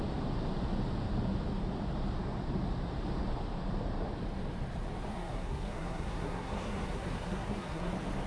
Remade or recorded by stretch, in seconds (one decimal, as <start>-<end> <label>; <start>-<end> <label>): 0.0-5.1 recorded; 5.1-7.9 remade; 7.9-8.3 recorded